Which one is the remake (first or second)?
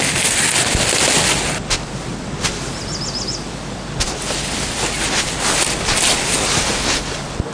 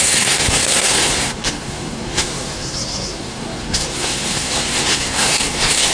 second